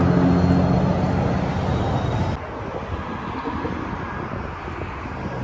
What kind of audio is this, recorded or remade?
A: recorded